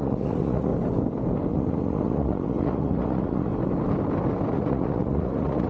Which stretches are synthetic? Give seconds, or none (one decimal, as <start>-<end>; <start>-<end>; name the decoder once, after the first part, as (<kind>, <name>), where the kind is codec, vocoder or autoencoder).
0.0-0.7 (vocoder, Vocos); 1.5-3.5; 4.5-5.7